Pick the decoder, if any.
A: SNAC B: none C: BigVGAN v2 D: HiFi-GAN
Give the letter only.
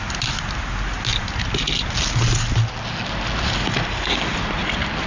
B